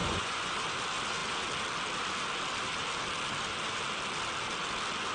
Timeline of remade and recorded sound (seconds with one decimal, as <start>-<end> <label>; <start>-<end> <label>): 0.0-0.5 remade; 0.5-5.1 recorded